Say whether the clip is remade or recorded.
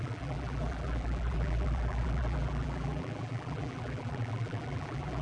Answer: remade